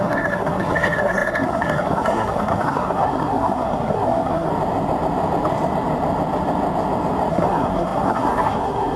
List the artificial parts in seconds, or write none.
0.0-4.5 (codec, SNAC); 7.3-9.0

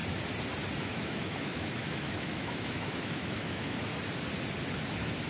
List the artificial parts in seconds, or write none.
0.8-3.9 (autoencoder, DAC-VAE)

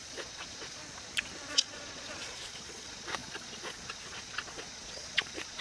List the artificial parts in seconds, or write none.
0.0-0.8 (vocoder, Vocos); 1.5-5.6

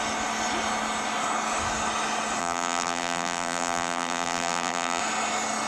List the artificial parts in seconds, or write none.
2.4-5.0 (vocoder, BigVGAN v2)

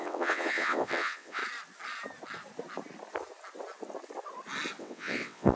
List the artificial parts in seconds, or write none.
0.0-1.4 (vocoder, WaveNeXt); 4.8-5.6